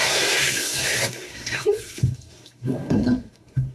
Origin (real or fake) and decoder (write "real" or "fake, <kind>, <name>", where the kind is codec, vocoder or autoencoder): fake, codec, SNAC